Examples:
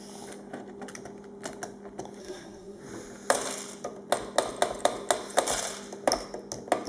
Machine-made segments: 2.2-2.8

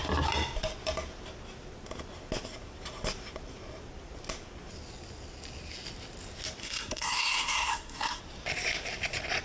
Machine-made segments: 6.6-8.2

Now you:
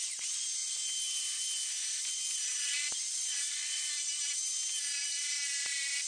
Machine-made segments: 3.1-3.8

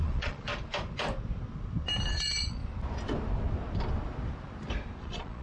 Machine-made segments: 0.0-0.5; 2.1-2.6; 5.0-5.4

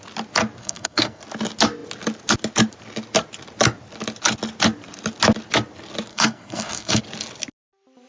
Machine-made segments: 0.6-1.2; 6.1-7.0